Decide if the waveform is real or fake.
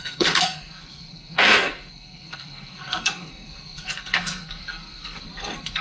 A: fake